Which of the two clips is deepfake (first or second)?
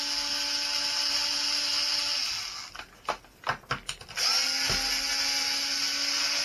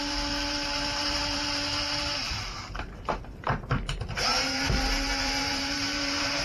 second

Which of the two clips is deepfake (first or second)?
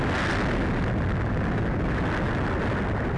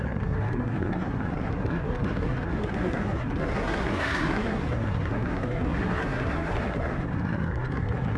second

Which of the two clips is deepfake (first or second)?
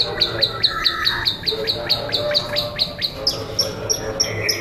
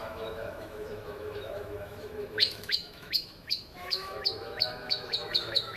second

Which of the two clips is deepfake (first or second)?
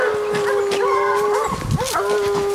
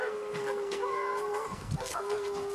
second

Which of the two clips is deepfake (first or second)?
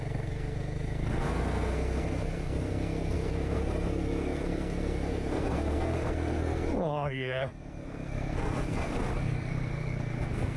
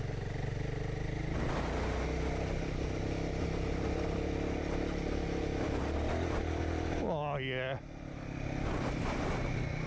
first